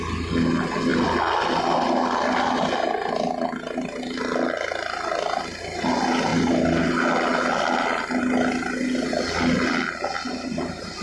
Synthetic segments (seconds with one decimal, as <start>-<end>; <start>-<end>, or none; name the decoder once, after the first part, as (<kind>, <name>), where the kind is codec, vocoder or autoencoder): none